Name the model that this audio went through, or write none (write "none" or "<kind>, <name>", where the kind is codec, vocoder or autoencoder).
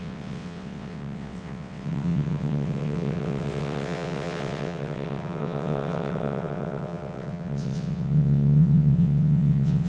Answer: vocoder, WaveNeXt